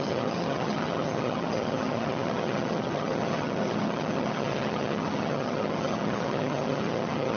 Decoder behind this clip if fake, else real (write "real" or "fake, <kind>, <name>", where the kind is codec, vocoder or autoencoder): fake, vocoder, HiFi-GAN